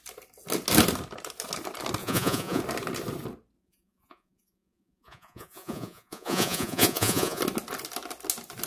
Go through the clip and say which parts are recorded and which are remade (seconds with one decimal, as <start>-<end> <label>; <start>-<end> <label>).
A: 0.0-2.0 recorded; 2.0-2.6 remade; 2.6-3.6 recorded; 3.6-7.4 remade; 7.4-8.7 recorded